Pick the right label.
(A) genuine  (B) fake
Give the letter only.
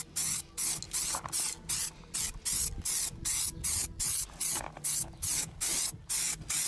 A